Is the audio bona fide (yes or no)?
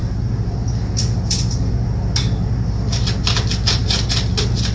yes